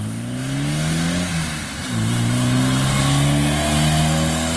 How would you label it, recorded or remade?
recorded